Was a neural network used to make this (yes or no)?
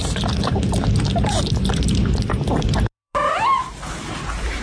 yes